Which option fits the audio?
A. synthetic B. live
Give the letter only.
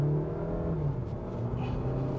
B